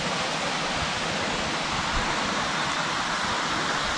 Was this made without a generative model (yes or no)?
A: yes